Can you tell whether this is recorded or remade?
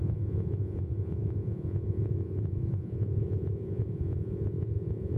remade